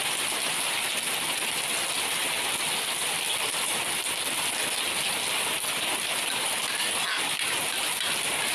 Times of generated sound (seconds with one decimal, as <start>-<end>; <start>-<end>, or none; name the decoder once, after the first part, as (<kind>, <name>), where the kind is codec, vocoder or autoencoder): none